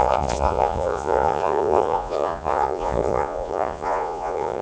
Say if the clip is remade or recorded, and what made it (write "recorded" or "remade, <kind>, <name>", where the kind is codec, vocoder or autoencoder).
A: remade, vocoder, Vocos